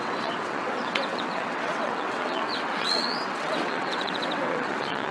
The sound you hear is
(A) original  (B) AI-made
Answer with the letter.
B